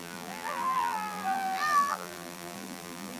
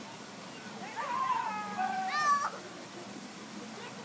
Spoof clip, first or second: first